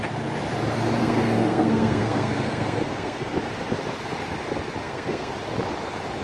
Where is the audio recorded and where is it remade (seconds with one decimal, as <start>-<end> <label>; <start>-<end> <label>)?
0.0-1.0 recorded; 1.0-3.4 remade; 3.4-4.8 recorded; 4.8-5.3 remade; 5.3-6.2 recorded